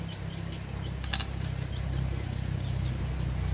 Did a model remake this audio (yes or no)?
no